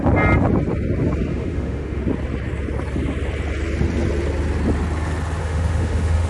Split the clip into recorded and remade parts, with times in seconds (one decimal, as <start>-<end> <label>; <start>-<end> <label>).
0.0-1.3 recorded; 1.3-2.0 remade; 2.0-5.4 recorded; 5.4-6.3 remade

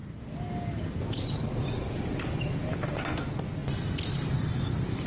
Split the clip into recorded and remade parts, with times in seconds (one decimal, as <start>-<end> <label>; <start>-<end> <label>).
0.0-5.1 recorded